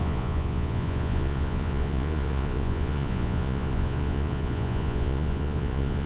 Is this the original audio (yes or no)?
no